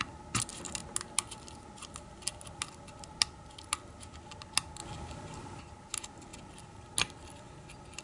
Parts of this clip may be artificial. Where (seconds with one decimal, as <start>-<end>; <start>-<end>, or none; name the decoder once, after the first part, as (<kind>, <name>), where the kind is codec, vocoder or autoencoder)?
none